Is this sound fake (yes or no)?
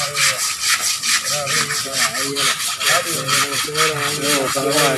no